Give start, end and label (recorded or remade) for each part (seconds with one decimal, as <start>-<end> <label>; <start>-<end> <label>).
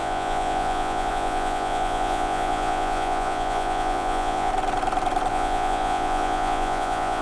0.0-4.5 remade; 4.5-5.3 recorded; 5.3-7.2 remade